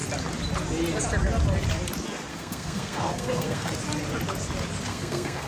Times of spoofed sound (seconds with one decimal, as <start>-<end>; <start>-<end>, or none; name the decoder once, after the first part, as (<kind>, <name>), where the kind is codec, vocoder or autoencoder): 2.3-3.7 (codec, SNAC); 4.9-5.5